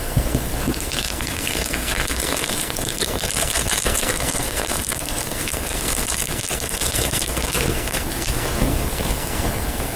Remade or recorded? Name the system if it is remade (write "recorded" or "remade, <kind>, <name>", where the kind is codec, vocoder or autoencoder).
remade, codec, SNAC